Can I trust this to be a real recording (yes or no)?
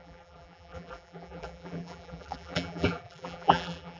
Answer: no